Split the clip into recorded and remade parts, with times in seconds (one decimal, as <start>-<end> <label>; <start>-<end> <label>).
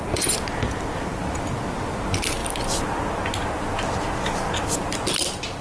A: 0.0-5.6 recorded